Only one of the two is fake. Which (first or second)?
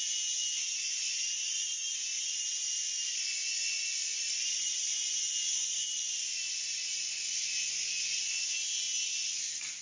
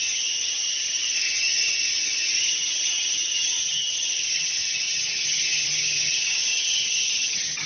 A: second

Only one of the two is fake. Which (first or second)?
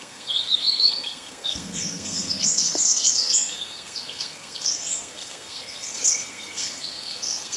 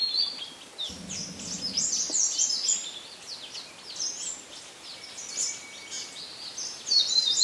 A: first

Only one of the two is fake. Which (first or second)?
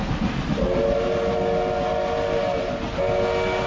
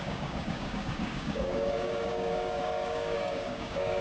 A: second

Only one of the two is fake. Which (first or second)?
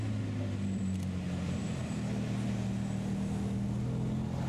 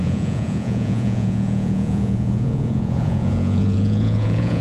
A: second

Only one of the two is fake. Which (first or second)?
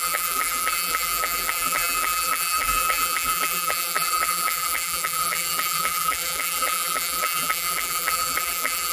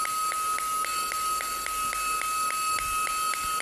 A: first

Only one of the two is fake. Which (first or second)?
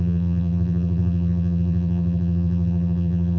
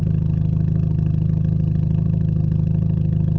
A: first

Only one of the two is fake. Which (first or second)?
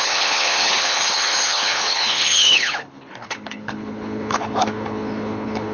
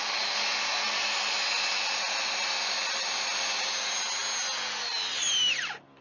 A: first